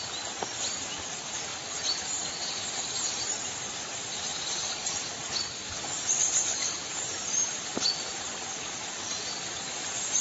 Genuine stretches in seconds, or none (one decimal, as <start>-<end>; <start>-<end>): 0.0-10.2